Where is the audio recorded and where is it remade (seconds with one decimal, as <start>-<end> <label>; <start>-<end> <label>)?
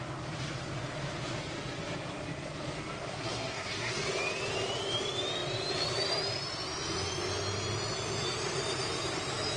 0.0-3.1 recorded; 3.1-3.9 remade; 3.9-9.6 recorded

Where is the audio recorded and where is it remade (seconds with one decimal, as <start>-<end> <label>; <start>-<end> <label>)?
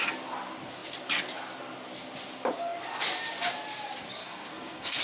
0.0-4.2 recorded; 4.2-5.0 remade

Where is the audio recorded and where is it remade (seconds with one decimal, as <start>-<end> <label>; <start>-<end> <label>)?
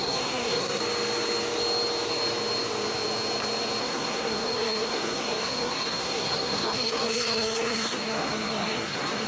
0.0-0.8 remade; 0.8-3.8 recorded; 3.8-9.3 remade